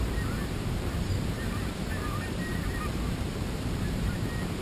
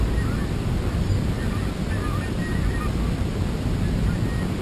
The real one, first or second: second